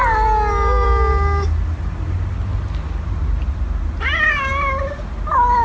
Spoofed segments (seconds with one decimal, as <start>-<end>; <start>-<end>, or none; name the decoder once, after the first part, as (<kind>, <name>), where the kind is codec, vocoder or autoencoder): none